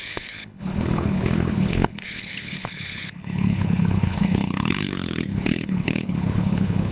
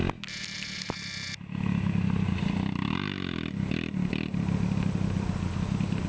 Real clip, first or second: second